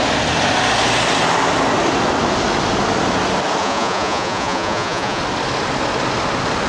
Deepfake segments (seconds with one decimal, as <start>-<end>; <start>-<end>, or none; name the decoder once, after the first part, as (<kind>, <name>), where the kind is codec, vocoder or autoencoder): 3.6-5.2 (vocoder, Vocos)